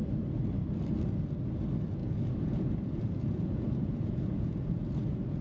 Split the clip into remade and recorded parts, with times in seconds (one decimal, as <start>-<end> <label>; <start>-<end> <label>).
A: 0.0-2.0 recorded; 2.0-5.4 remade